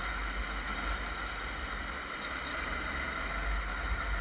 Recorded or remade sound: recorded